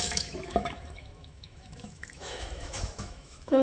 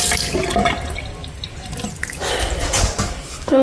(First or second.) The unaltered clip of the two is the second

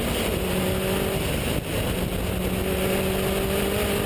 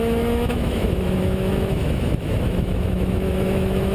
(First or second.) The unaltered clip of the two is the first